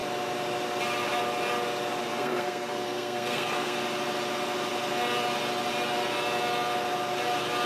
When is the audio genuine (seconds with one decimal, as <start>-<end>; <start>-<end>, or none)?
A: 0.0-2.0; 3.8-7.7